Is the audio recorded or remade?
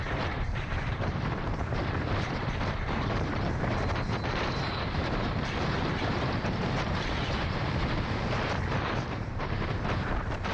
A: remade